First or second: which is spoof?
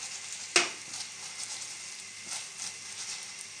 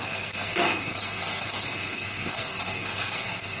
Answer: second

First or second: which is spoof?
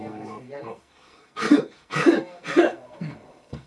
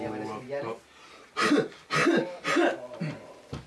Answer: first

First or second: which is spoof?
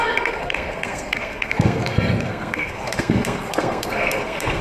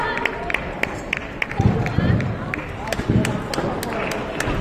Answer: first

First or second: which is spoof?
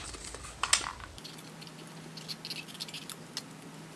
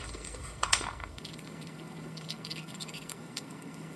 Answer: second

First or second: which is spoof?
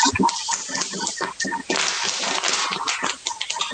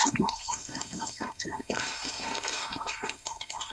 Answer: second